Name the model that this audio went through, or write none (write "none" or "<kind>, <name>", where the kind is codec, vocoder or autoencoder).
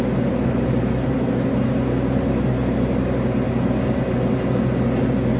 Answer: none